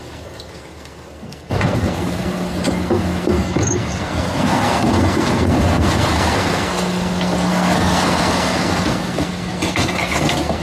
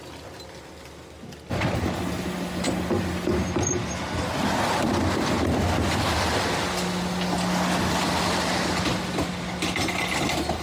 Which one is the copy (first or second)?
first